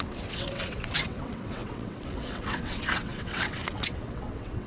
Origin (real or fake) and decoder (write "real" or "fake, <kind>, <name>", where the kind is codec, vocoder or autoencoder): fake, vocoder, WaveNeXt